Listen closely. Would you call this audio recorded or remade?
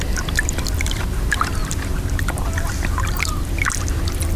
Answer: recorded